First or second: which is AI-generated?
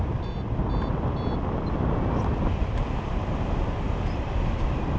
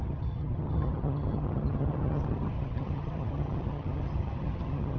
second